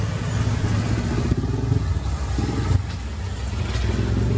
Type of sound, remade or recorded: recorded